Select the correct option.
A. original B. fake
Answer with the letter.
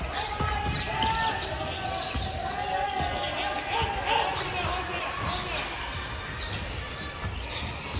A